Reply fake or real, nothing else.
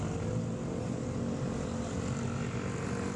real